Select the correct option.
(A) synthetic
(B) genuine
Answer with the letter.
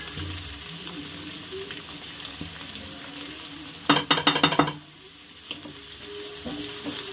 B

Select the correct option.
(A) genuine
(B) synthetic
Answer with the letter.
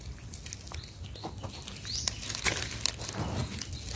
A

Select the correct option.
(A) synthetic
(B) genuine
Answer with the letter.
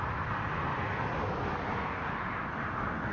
B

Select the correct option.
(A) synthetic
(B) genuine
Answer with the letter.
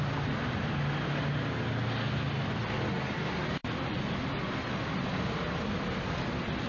B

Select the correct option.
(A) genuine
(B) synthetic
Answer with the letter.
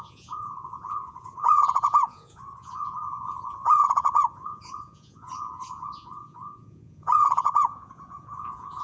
B